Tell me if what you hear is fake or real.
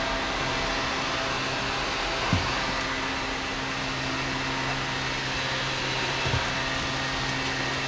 real